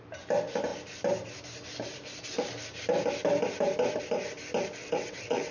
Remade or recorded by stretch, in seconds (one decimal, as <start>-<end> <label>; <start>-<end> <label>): 0.0-4.8 recorded; 4.8-5.5 remade